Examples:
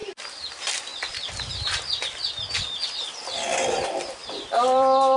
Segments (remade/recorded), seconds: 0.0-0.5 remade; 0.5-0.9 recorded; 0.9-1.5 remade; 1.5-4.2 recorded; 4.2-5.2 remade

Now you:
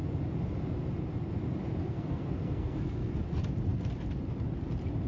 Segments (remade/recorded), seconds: 0.0-1.8 recorded; 1.8-3.2 remade; 3.2-5.1 recorded

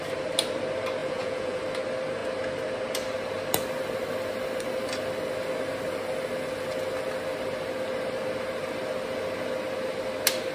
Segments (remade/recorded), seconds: 0.0-1.0 recorded; 1.0-1.6 remade; 1.6-10.5 recorded

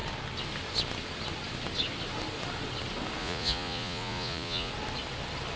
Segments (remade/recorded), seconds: 0.0-3.2 recorded; 3.2-4.7 remade; 4.7-5.6 recorded

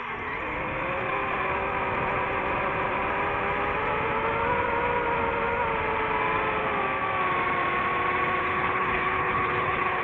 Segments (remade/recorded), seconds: 0.0-8.4 recorded; 8.4-10.0 remade